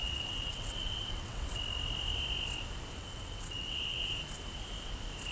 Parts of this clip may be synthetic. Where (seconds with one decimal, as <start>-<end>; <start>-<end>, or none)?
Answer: 0.0-1.6; 3.0-4.1